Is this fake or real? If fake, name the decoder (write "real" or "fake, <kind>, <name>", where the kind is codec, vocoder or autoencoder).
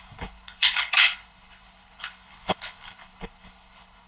fake, codec, HILCodec